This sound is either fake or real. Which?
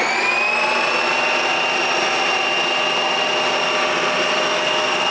real